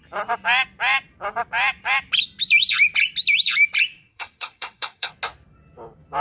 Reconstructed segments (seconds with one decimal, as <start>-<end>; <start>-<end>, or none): 3.9-5.1